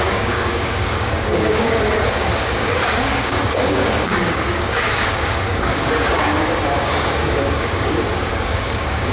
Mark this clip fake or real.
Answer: fake